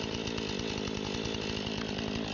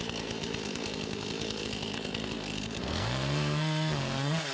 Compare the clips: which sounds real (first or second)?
first